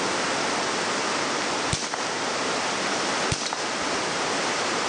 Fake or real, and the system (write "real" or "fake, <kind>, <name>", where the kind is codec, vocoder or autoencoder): real